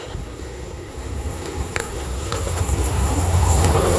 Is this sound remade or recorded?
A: remade